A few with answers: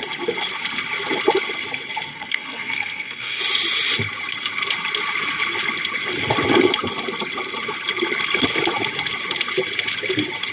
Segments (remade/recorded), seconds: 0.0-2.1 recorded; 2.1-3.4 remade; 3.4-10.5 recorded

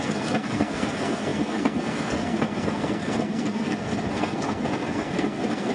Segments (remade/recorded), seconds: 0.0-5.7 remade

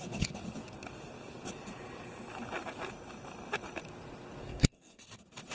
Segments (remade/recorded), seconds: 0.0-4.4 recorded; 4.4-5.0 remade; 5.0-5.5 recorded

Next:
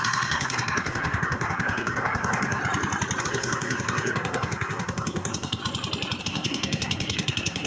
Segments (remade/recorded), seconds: 0.0-2.6 remade; 2.6-3.2 recorded; 3.2-5.6 remade; 5.6-6.2 recorded; 6.2-7.7 remade

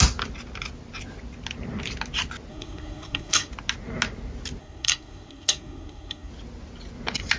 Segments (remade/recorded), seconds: 0.0-2.5 recorded; 2.5-3.5 remade; 3.5-4.6 recorded; 4.6-6.3 remade; 6.3-7.4 recorded

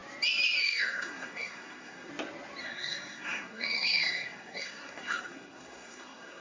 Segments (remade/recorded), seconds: 0.0-0.6 recorded; 0.6-2.1 remade; 2.1-2.6 recorded; 2.6-6.4 remade

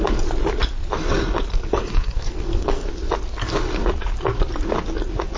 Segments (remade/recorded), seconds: 0.0-1.5 recorded; 1.5-2.9 remade; 2.9-5.4 recorded